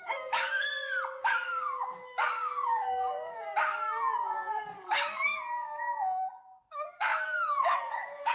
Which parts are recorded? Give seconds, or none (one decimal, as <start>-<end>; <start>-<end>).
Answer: 0.7-1.2